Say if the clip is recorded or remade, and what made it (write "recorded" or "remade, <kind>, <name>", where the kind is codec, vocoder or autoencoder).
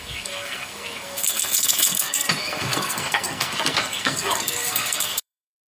remade, codec, SNAC